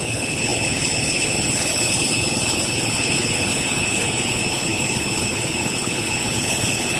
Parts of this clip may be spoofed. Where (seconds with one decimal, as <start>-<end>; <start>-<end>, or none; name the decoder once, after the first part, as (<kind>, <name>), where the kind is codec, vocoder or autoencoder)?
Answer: 0.0-7.0 (codec, HILCodec)